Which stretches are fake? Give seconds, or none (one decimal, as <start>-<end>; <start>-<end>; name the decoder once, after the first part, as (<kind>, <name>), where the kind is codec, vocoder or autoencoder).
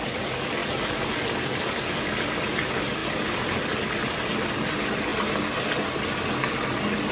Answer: none